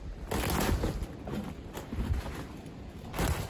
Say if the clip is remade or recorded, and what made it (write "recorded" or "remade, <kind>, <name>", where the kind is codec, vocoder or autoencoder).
recorded